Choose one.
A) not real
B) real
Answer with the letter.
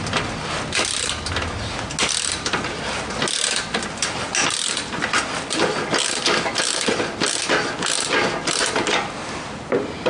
B